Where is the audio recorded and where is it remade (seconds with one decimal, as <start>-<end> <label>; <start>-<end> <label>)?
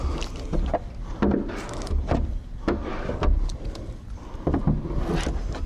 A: 0.0-5.7 recorded